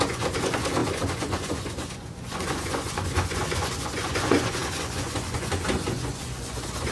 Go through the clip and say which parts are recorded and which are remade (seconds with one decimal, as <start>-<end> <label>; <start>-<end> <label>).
0.0-6.9 remade